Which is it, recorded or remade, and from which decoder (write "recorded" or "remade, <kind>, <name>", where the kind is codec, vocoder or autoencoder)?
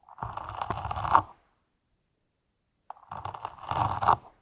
remade, vocoder, BigVGAN v2